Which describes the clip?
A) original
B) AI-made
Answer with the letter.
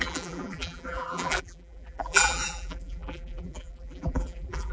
B